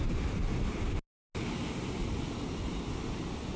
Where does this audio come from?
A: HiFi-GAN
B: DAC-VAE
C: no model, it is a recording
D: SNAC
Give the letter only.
C